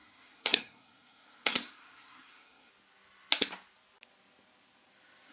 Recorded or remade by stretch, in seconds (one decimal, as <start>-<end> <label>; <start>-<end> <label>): 0.0-2.7 remade; 2.7-5.3 recorded